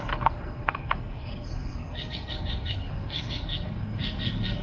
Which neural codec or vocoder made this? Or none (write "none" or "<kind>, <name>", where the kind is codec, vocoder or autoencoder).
codec, SNAC